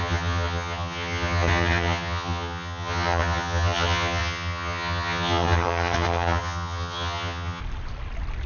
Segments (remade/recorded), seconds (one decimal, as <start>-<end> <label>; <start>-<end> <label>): 0.0-7.6 remade; 7.6-8.5 recorded